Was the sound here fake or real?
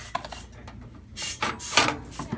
real